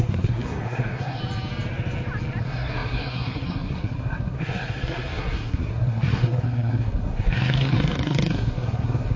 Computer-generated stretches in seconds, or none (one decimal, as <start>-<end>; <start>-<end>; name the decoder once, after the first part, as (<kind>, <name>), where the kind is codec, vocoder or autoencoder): 0.0-1.2 (codec, SNAC); 2.4-9.2